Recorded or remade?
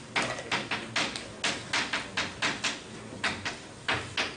recorded